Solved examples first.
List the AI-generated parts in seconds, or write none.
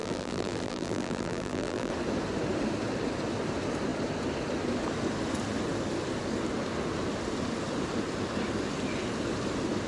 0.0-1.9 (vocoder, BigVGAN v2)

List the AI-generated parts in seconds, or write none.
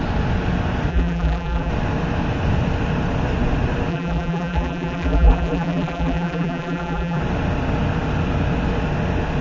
0.9-1.7 (vocoder, BigVGAN v2); 3.9-7.2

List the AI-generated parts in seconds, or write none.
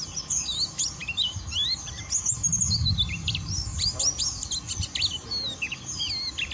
none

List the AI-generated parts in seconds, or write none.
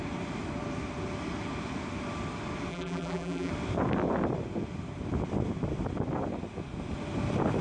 2.7-3.5 (vocoder, BigVGAN v2)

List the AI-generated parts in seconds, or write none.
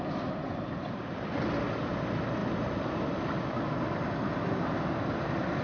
none